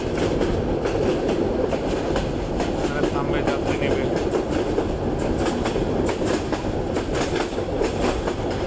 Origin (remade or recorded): recorded